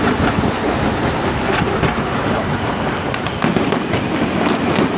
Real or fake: real